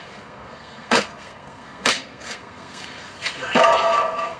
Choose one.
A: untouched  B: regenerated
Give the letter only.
B